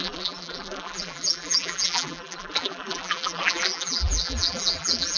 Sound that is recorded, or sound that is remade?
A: remade